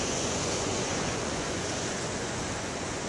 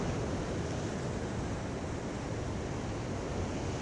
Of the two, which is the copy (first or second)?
first